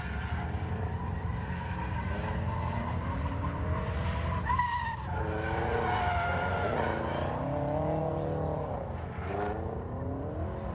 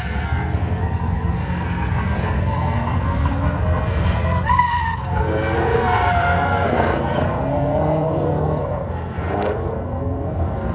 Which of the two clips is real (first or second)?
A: first